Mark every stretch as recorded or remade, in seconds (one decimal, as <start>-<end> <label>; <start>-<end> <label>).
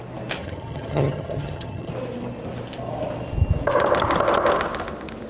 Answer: 0.0-0.4 recorded; 0.4-1.9 remade; 1.9-5.3 recorded